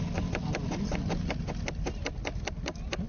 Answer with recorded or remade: recorded